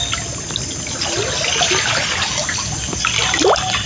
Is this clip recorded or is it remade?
recorded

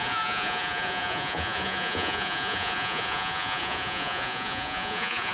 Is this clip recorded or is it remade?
remade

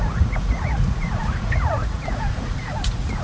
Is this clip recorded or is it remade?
remade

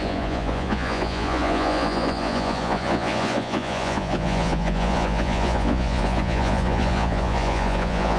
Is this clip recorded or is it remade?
remade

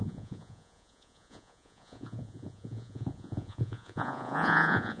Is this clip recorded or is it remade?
remade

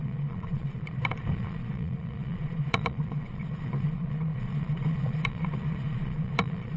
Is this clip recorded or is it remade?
remade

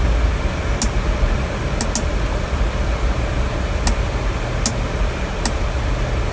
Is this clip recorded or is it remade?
recorded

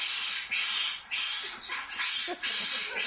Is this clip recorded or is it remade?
recorded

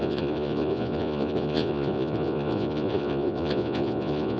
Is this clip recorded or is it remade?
remade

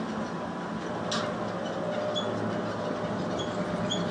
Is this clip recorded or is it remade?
recorded